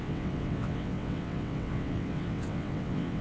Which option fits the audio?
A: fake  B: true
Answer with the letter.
A